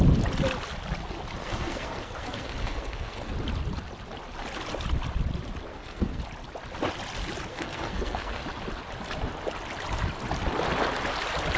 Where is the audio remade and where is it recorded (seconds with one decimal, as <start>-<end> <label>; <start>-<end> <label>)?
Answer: 0.0-1.4 recorded; 1.4-3.3 remade; 3.3-5.7 recorded; 5.7-6.2 remade; 6.2-7.5 recorded; 7.5-8.4 remade; 8.4-11.6 recorded